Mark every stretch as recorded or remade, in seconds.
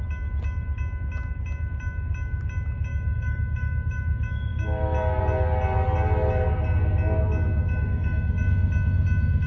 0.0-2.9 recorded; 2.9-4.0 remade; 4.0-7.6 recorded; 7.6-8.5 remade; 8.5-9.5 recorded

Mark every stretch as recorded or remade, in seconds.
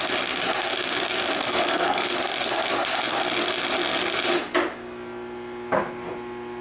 0.0-1.4 recorded; 1.4-2.1 remade; 2.1-6.6 recorded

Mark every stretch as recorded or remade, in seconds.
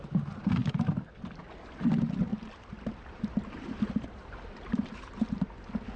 0.0-0.6 recorded; 0.6-1.3 remade; 1.3-2.3 recorded; 2.3-5.3 remade; 5.3-6.0 recorded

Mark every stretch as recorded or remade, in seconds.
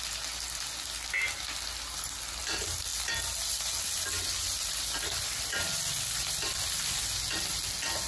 0.0-8.1 recorded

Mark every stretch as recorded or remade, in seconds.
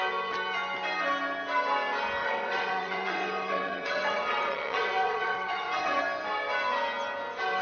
0.0-2.2 recorded; 2.2-6.0 remade; 6.0-7.6 recorded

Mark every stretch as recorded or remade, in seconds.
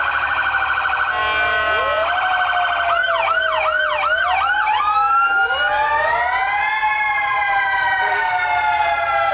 0.0-6.4 recorded; 6.4-9.3 remade